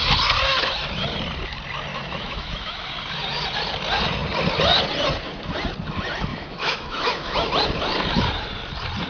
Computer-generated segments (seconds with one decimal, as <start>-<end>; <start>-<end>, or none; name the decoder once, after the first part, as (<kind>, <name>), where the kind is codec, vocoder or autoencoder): 1.9-2.9 (autoencoder, DAC-VAE); 6.3-7.5